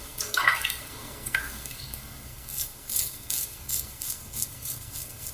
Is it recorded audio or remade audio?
remade